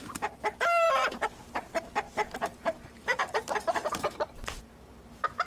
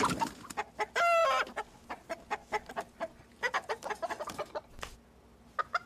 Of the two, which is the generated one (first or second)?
first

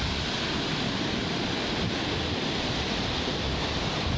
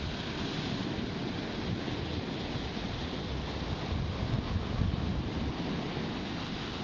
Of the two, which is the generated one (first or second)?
first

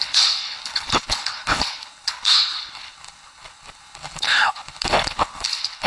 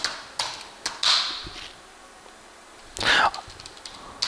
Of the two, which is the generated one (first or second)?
first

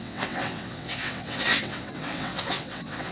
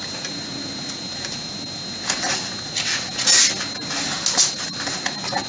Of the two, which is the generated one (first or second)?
first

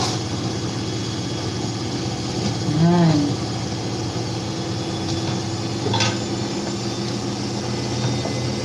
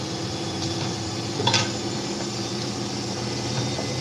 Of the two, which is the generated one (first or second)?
second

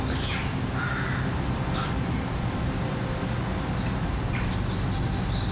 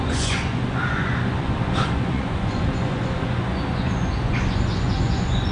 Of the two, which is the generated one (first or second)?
second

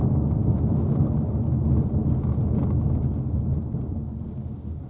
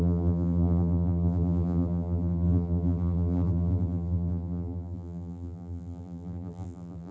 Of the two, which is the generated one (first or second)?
second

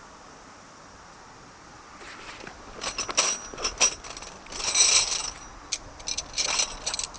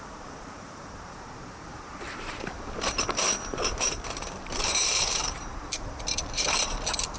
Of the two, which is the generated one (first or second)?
second